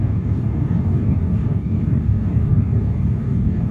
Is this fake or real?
fake